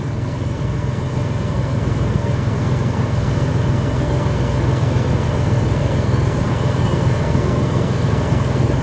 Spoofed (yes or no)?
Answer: yes